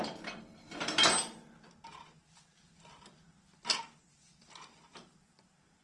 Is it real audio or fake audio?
real